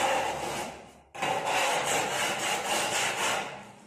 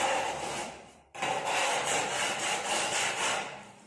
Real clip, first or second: first